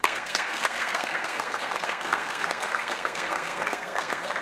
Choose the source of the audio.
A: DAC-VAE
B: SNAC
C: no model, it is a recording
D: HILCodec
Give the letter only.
B